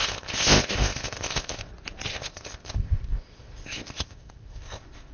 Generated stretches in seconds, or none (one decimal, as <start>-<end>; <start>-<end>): 0.0-1.7; 2.1-5.1